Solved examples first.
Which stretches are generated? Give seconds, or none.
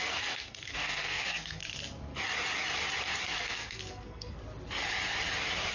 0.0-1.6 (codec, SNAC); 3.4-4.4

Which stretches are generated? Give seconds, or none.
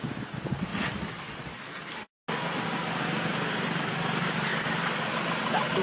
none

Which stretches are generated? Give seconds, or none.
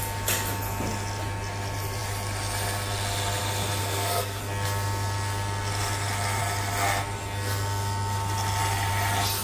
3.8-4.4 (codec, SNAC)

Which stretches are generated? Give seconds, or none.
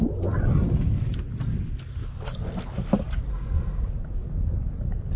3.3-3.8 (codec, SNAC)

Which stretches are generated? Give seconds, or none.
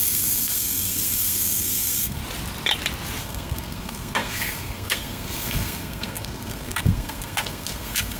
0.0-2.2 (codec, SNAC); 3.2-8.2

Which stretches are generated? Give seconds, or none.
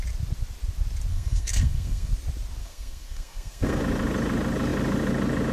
1.1-2.1 (codec, SNAC); 2.6-3.8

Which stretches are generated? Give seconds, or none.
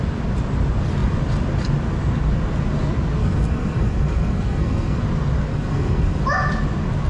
3.2-5.0 (codec, SNAC); 5.5-6.2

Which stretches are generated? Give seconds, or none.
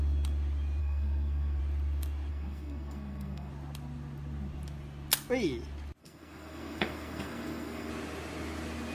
0.8-1.6 (codec, SNAC); 2.3-3.5; 6.0-7.9